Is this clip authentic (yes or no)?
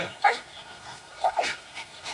no